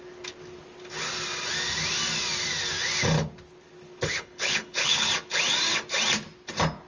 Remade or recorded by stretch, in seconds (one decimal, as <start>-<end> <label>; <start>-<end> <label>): 0.0-4.1 recorded; 4.1-5.1 remade; 5.1-6.9 recorded